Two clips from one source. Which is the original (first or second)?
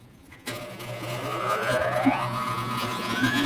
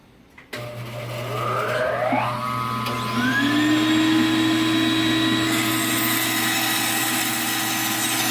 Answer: second